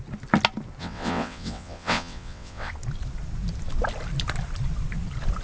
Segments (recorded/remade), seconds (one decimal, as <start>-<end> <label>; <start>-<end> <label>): 0.0-0.8 recorded; 0.8-2.7 remade; 2.7-5.4 recorded